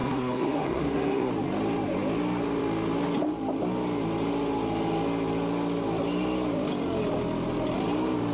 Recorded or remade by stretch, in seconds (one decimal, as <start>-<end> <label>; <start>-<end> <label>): 0.0-1.3 remade; 1.3-8.3 recorded